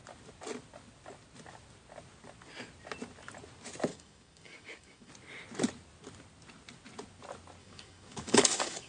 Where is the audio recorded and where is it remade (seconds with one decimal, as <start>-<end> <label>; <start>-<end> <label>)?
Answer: 0.0-3.9 recorded; 3.9-5.1 remade; 5.1-7.6 recorded; 7.6-8.9 remade